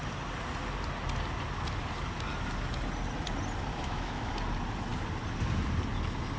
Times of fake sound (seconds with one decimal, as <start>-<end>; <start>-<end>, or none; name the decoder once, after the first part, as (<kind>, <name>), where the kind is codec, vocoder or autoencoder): 3.7-4.3 (autoencoder, DAC-VAE)